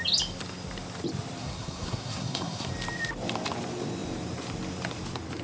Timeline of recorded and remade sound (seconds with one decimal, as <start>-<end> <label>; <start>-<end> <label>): 0.0-1.4 recorded; 1.4-2.7 remade; 2.7-5.4 recorded